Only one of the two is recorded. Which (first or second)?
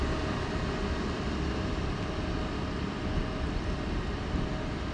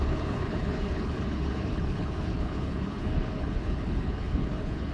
first